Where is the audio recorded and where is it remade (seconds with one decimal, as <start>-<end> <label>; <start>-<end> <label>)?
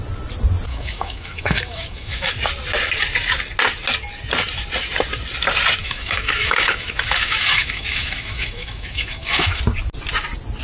0.0-0.7 recorded; 0.7-2.3 remade; 2.3-5.8 recorded; 5.8-9.6 remade; 9.6-10.6 recorded